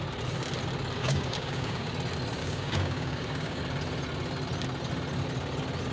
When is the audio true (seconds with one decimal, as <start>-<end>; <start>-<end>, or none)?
0.0-1.0; 1.9-2.4; 3.6-5.9